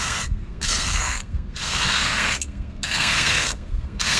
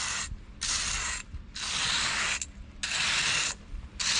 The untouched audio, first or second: second